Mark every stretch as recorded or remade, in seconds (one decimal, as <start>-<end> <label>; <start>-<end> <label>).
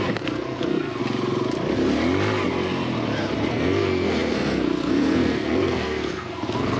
0.0-1.0 remade; 1.0-3.5 recorded; 3.5-6.8 remade